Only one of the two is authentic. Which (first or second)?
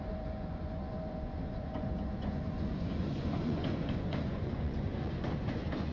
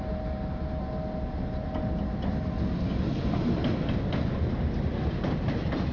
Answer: second